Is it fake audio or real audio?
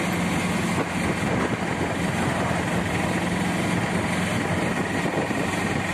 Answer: real